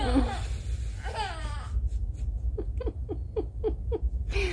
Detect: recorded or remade recorded